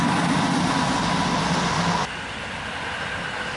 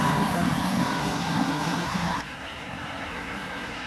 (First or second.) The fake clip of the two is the second